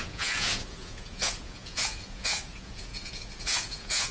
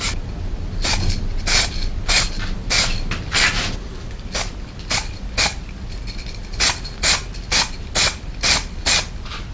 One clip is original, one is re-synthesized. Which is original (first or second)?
second